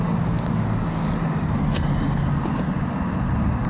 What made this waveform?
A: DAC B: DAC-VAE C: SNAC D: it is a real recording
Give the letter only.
D